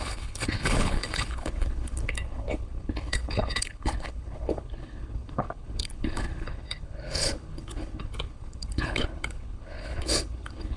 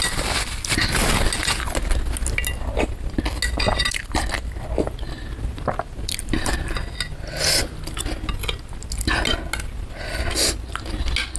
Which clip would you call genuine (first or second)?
second